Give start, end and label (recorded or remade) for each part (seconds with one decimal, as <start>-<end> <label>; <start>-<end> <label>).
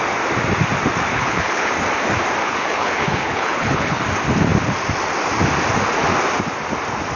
0.0-1.1 recorded; 1.1-1.7 remade; 1.7-2.4 recorded; 2.4-4.0 remade; 4.0-7.2 recorded